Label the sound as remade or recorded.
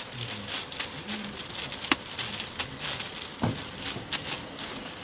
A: recorded